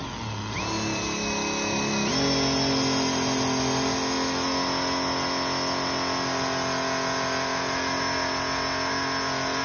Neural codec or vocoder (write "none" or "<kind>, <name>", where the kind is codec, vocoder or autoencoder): none